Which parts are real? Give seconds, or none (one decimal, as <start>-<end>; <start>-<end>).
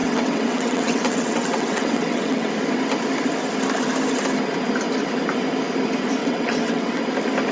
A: 2.5-6.2; 7.1-7.5